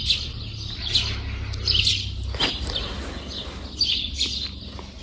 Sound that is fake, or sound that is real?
real